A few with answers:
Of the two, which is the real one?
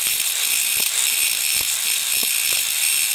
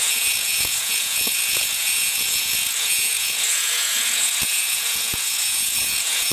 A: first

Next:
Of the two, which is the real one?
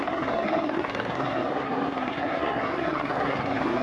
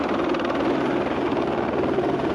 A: second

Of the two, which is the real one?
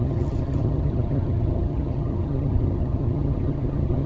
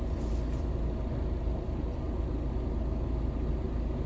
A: second